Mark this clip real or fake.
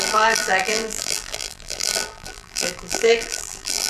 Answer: fake